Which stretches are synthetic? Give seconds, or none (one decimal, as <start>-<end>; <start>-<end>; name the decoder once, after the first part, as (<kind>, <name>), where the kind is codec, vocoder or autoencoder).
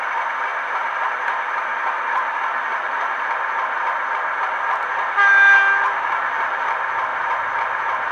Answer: 7.1-8.1 (vocoder, BigVGAN v2)